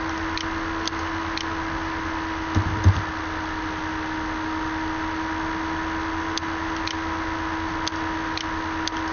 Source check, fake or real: real